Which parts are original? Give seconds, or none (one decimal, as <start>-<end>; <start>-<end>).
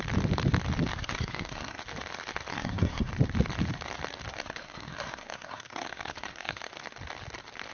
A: 0.0-0.9; 1.8-2.5; 3.1-4.3; 6.7-7.7